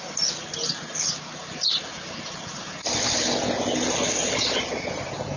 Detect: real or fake real